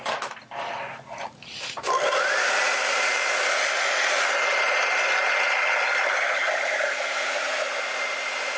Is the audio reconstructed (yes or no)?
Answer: no